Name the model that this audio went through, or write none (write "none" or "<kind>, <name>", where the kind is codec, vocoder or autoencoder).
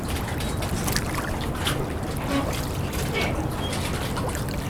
none